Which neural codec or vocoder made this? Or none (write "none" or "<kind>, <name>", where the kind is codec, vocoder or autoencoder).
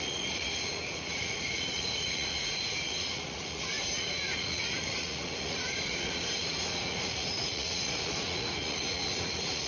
vocoder, Vocos